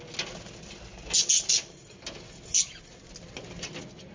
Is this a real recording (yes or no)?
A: yes